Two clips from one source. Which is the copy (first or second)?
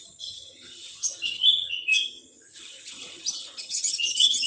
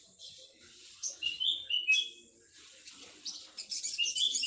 first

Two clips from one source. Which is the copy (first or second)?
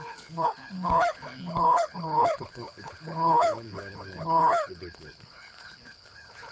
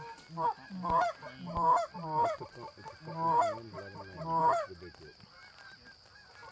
first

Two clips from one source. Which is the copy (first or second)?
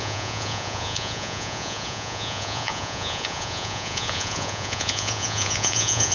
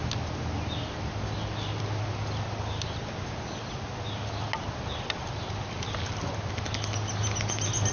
first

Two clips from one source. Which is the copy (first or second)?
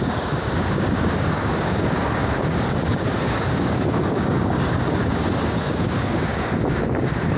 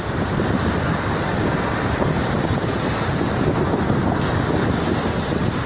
first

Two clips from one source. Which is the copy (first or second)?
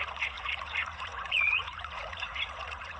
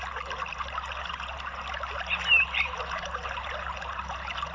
first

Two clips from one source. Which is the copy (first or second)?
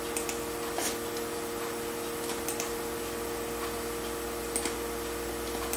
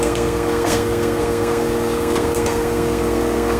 second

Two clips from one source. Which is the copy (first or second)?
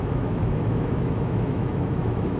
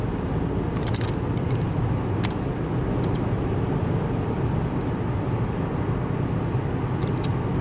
first